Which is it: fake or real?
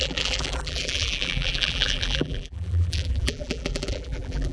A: fake